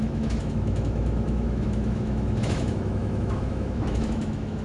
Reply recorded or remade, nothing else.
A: remade